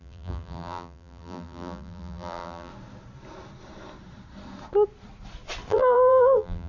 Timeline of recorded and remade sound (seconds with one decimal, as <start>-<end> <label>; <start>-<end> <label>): 0.0-2.7 remade; 2.7-5.7 recorded; 5.7-6.7 remade